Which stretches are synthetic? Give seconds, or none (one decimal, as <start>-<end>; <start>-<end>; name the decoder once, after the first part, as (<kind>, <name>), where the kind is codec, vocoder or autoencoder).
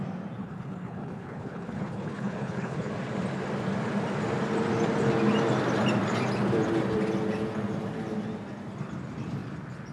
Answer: 0.4-2.9 (codec, HILCodec)